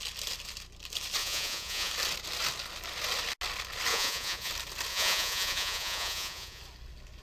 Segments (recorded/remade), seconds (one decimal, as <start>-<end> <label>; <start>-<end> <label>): 0.0-1.2 recorded; 1.2-1.9 remade; 1.9-3.9 recorded; 3.9-4.5 remade; 4.5-4.9 recorded; 4.9-6.6 remade; 6.6-7.2 recorded